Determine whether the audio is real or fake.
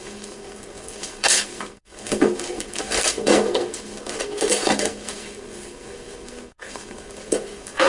fake